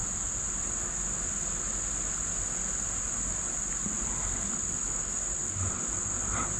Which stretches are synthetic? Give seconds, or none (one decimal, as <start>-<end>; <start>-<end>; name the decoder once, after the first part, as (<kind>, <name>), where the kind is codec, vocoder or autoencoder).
none